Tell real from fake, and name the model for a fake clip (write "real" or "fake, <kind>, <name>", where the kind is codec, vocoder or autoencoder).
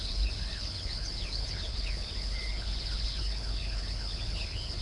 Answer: fake, codec, HILCodec